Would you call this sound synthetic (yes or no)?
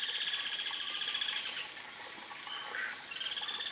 no